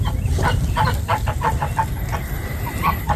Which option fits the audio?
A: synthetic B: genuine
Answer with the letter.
B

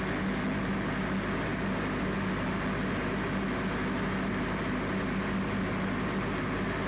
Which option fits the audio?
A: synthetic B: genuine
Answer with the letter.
B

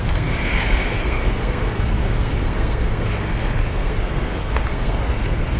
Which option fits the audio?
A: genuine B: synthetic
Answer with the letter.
B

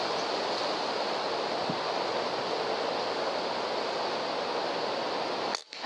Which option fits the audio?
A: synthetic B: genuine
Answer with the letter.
B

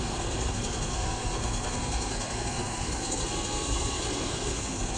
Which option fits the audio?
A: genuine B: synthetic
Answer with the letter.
B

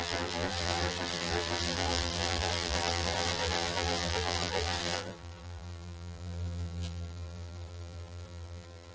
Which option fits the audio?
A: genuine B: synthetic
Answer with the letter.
B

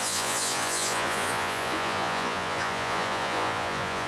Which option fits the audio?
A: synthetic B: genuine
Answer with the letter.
A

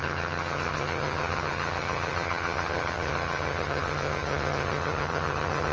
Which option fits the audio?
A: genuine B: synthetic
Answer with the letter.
B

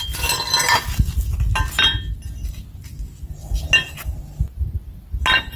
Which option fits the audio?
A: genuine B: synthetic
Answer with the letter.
A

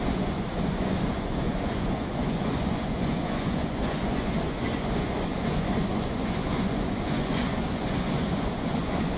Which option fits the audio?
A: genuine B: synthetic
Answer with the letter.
B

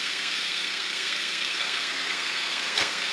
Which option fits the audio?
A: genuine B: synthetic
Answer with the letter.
B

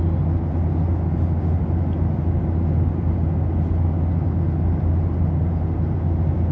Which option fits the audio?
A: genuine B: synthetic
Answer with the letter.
A